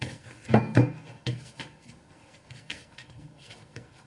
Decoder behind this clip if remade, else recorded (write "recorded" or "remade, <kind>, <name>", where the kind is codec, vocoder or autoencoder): remade, codec, SNAC